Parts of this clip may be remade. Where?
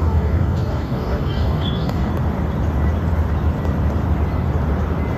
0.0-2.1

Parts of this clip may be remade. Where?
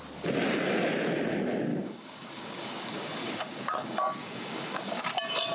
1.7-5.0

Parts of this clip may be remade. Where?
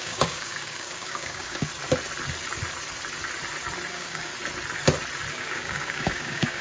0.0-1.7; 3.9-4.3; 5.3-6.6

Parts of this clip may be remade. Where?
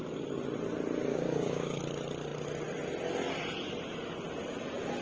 1.1-1.8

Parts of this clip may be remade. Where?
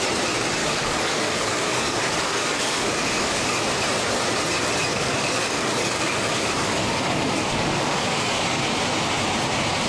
0.6-3.6; 4.9-8.6